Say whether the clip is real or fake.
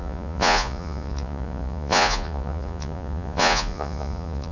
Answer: fake